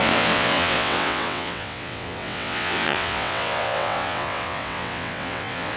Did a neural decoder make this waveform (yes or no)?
yes